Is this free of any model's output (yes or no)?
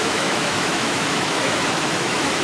no